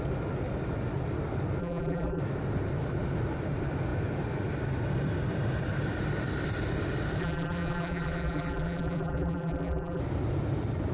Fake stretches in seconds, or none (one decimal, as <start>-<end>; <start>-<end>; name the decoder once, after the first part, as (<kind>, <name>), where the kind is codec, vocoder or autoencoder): 1.6-2.2 (vocoder, BigVGAN v2); 7.2-10.0